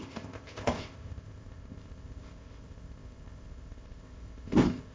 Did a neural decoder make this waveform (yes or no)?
yes